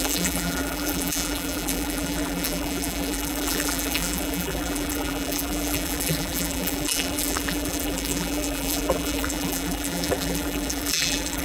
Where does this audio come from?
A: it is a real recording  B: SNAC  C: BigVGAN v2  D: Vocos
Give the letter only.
C